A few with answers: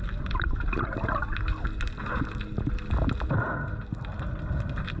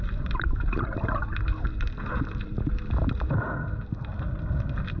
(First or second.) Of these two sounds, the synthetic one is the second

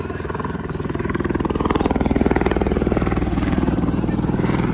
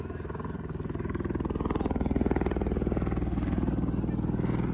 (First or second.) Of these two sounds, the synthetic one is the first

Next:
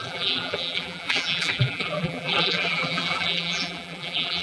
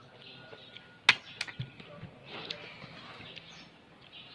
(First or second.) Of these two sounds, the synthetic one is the first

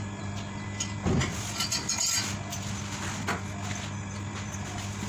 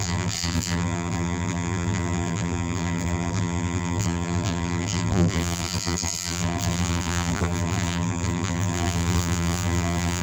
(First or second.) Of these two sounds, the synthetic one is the second